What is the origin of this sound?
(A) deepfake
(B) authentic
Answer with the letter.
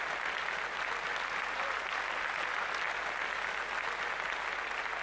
B